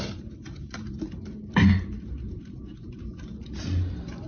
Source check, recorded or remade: remade